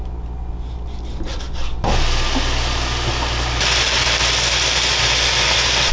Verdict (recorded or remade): recorded